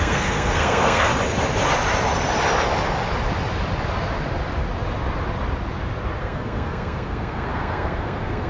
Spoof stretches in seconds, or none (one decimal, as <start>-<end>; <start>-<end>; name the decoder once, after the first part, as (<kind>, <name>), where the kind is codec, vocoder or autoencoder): 0.0-1.1 (codec, SNAC); 6.2-8.5